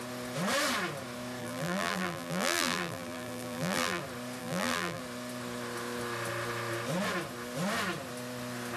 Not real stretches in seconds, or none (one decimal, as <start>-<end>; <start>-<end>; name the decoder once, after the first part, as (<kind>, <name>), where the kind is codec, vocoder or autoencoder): 1.4-4.0 (vocoder, BigVGAN v2); 4.4-5.0